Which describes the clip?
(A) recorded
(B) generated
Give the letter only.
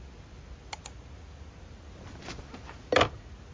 A